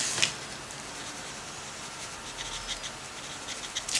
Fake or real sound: real